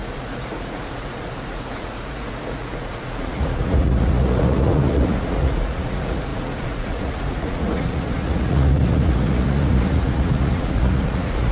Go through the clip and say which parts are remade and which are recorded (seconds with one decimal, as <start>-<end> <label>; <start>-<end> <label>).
0.0-11.5 remade